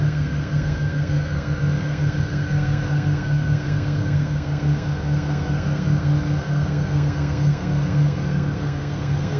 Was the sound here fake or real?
fake